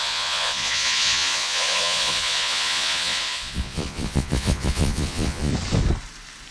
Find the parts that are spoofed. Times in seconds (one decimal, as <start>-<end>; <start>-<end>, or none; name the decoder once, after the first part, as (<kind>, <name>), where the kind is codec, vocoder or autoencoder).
0.0-5.5 (vocoder, Vocos)